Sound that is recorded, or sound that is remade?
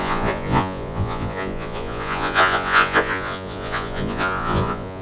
remade